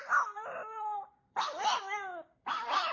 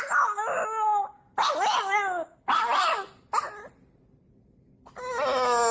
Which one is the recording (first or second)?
second